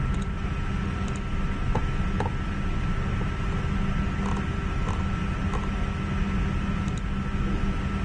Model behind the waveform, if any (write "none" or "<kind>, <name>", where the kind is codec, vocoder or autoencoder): none